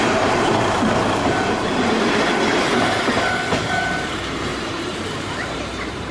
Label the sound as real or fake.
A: fake